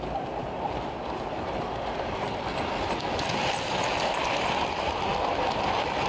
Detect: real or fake real